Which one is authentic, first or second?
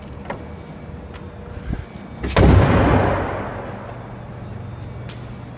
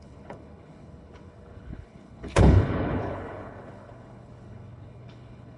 first